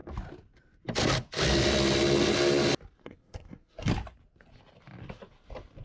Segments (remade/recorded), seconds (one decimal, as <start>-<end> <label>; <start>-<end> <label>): 0.0-3.0 recorded; 3.0-3.9 remade; 3.9-5.8 recorded

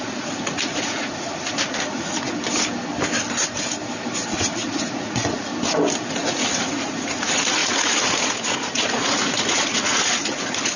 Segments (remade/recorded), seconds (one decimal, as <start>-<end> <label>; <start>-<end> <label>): 0.0-2.3 remade; 2.3-4.3 recorded; 4.3-5.5 remade; 5.5-6.1 recorded; 6.1-10.8 remade

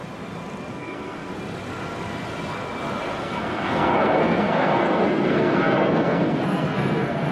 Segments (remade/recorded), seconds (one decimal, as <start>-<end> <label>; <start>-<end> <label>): 0.0-0.7 recorded; 0.7-1.3 remade; 1.3-3.2 recorded; 3.2-7.3 remade

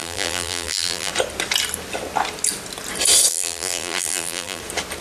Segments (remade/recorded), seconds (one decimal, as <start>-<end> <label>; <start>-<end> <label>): 0.0-1.1 remade; 1.1-3.3 recorded; 3.3-4.6 remade; 4.6-5.0 recorded

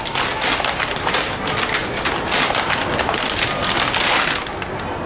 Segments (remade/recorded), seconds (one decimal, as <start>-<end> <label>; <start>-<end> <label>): 0.0-5.1 recorded